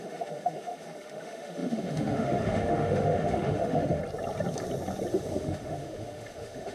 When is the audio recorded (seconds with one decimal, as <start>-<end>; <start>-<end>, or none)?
4.0-5.1

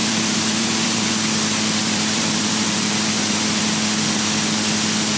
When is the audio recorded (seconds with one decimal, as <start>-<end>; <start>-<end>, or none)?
1.1-1.8; 3.6-5.2

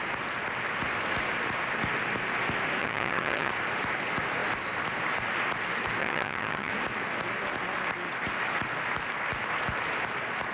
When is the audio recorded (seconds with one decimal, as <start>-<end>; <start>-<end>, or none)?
0.0-2.8; 3.5-6.0; 6.7-10.5

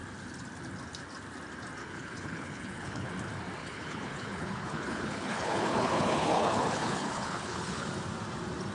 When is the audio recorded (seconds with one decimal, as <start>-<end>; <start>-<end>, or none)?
0.0-1.8; 3.1-3.6; 7.9-8.7